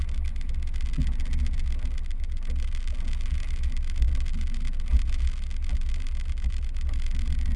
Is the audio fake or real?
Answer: real